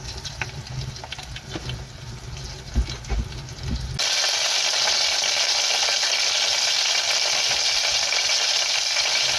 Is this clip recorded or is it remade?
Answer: recorded